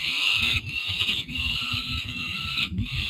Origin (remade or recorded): remade